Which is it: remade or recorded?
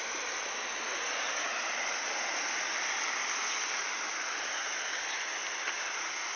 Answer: recorded